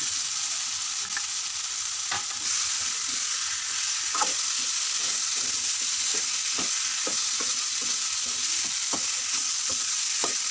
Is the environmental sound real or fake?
real